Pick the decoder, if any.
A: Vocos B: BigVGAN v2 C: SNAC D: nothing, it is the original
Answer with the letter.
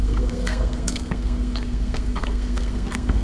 C